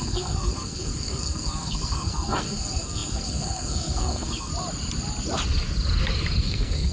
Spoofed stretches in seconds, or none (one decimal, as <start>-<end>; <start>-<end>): 0.0-4.5; 6.4-6.9